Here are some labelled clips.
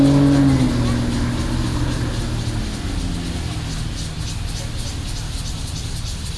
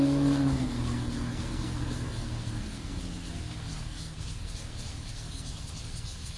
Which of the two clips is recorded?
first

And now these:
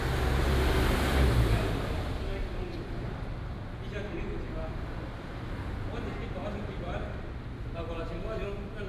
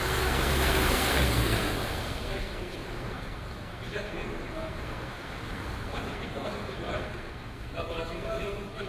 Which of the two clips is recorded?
first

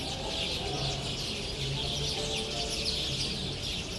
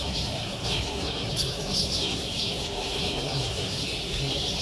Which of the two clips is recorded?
first